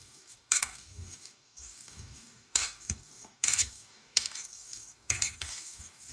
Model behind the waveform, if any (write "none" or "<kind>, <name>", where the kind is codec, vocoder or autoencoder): codec, DAC